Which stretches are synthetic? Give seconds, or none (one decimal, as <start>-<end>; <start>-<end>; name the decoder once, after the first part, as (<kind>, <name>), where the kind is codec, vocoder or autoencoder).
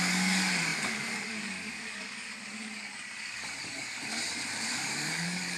0.0-4.1 (codec, DAC); 4.7-5.6